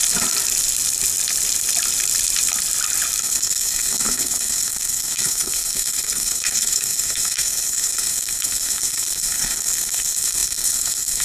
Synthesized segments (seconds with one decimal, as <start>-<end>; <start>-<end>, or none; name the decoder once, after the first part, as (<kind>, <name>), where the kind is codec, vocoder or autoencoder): 3.2-11.2 (codec, SNAC)